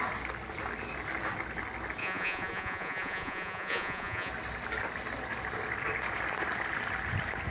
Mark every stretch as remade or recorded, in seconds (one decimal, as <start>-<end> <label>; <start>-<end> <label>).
0.0-2.0 recorded; 2.0-4.3 remade; 4.3-7.5 recorded